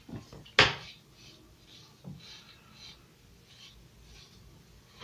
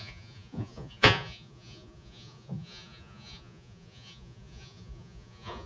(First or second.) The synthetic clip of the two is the second